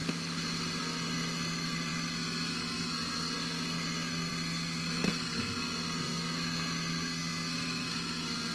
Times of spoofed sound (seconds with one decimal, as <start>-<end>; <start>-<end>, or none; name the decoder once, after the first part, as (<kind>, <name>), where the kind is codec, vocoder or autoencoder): 0.8-8.5 (codec, SNAC)